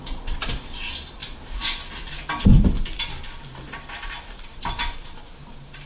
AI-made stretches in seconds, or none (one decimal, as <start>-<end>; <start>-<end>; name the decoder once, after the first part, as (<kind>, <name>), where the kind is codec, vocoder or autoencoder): none